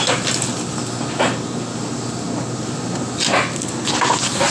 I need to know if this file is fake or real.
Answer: real